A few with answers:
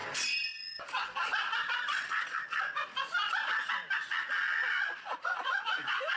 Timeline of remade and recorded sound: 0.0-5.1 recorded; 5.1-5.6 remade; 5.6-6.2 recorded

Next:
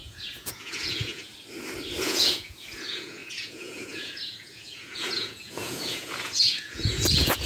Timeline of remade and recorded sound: 0.0-1.3 remade; 1.3-2.0 recorded; 2.0-7.5 remade

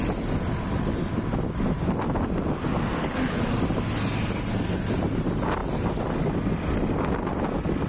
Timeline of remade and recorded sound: 0.0-7.9 recorded

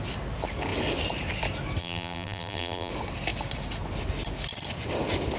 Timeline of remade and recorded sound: 0.0-1.8 recorded; 1.8-2.9 remade; 2.9-5.4 recorded

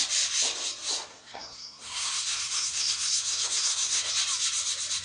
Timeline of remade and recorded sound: 0.0-1.1 recorded; 1.1-4.1 remade; 4.1-5.0 recorded